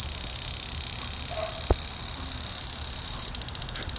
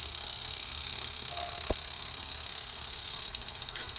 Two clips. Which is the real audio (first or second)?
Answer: first